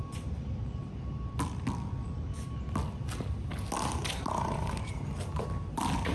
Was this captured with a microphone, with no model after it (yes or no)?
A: yes